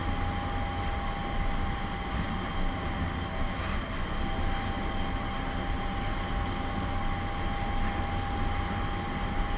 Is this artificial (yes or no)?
no